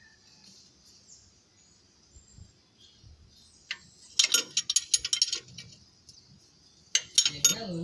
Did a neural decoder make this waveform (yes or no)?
no